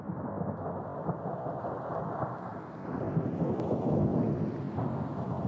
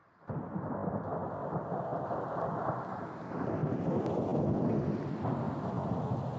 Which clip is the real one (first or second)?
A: first